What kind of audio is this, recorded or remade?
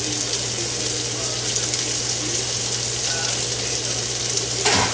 recorded